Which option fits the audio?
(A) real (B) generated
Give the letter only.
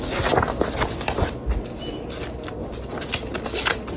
A